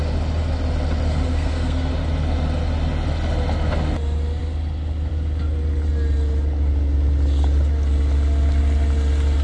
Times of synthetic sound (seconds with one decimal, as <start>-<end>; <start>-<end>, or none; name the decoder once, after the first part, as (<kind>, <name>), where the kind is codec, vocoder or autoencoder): 1.3-1.9 (codec, SNAC)